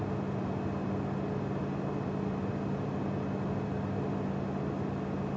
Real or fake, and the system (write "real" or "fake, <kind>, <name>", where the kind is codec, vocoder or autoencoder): real